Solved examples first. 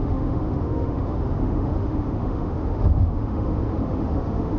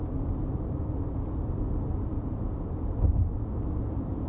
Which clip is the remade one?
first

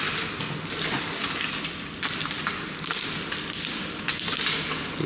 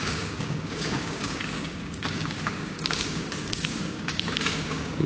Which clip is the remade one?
second